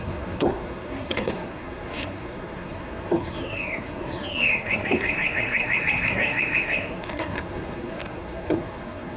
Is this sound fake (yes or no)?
yes